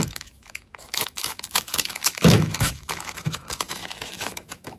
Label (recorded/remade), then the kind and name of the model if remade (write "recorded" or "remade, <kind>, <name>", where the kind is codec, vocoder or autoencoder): remade, autoencoder, DAC-VAE